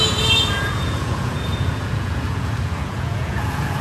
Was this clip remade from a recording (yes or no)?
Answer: yes